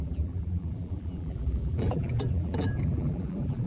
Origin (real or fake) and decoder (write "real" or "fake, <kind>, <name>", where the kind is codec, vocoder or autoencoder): fake, vocoder, BigVGAN v2